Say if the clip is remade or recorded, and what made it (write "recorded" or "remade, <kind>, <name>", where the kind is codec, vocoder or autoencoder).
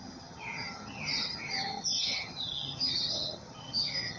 remade, vocoder, HiFi-GAN